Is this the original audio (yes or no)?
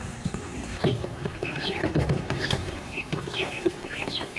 no